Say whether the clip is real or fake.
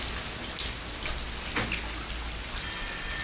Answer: real